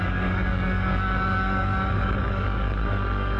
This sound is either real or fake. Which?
fake